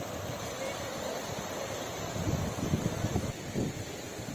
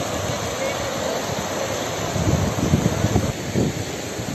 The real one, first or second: second